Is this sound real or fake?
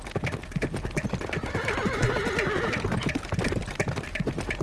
real